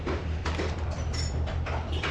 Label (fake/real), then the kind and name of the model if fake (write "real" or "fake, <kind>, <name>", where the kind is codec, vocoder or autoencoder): fake, vocoder, BigVGAN v2